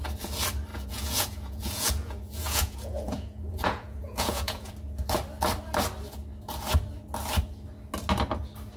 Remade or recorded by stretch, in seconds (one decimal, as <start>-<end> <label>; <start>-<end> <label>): 0.0-0.7 recorded; 0.7-4.7 remade; 4.7-8.8 recorded